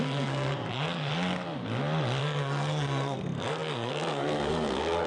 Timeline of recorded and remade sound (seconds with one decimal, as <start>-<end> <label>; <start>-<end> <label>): 0.0-1.1 remade; 1.1-2.2 recorded; 2.2-5.1 remade